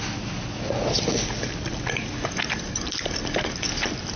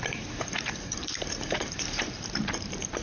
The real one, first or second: first